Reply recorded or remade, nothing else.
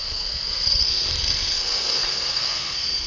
remade